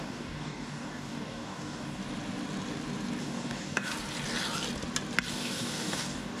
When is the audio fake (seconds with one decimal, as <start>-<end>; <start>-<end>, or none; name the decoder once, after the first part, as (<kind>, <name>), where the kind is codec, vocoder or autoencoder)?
0.0-2.0 (codec, DAC); 3.2-3.9; 5.3-6.4